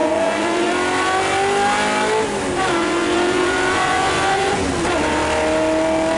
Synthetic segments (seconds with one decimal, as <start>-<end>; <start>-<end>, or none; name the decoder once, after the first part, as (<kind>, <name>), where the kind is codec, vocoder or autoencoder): 0.0-0.7 (vocoder, Vocos); 2.8-4.7